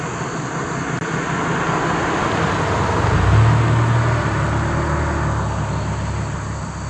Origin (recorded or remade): recorded